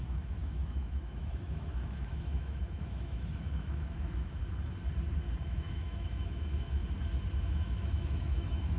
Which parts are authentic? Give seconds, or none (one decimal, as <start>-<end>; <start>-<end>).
4.4-5.4; 6.8-7.4